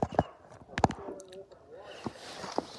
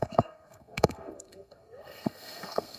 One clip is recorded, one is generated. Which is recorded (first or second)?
first